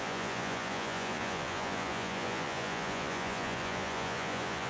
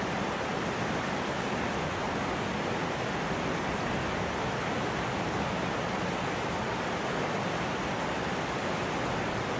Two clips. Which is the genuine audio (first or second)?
second